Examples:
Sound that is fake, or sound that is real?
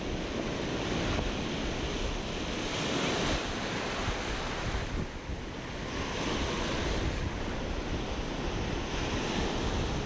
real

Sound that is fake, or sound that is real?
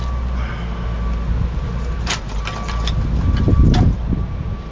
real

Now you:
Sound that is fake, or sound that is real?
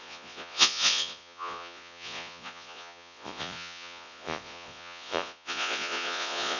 fake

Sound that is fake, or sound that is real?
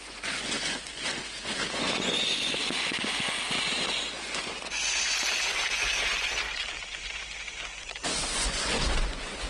fake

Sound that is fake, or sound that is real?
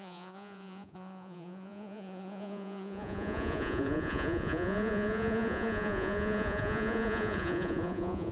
fake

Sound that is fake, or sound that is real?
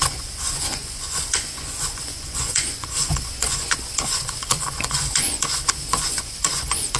fake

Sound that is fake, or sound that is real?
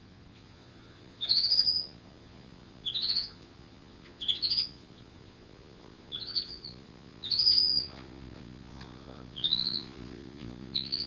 fake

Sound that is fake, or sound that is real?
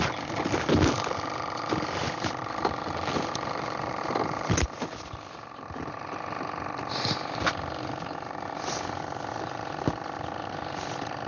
real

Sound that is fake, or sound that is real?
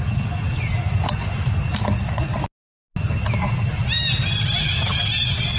real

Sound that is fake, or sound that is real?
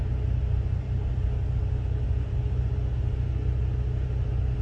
real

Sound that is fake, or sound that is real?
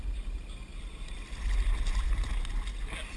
real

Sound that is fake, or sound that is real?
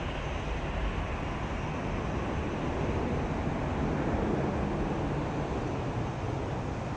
real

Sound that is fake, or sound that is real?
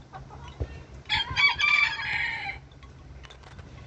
real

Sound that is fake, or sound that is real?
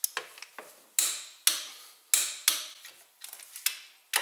real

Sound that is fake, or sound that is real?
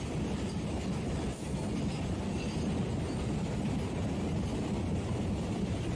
real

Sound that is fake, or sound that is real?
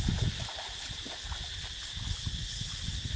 real